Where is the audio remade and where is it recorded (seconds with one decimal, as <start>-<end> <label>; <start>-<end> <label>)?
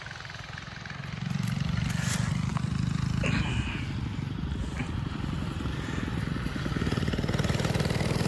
0.0-8.3 recorded